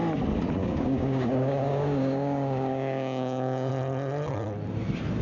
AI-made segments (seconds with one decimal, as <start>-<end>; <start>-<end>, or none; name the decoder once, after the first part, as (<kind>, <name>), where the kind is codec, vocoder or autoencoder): 0.6-3.7 (codec, DAC)